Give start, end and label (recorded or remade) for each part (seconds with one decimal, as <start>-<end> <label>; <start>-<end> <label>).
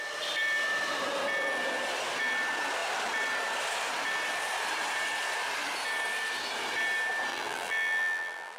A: 0.0-7.3 recorded; 7.3-8.6 remade